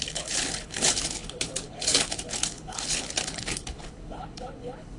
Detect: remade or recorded remade